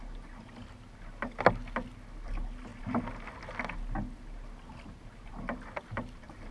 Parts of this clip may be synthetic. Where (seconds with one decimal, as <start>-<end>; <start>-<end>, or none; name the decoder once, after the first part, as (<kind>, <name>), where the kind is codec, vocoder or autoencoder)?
none